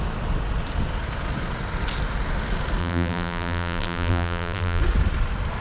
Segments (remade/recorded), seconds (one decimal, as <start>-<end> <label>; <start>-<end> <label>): 0.0-2.8 recorded; 2.8-4.8 remade; 4.8-5.6 recorded